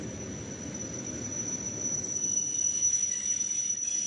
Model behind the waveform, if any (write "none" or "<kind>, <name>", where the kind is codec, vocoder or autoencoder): none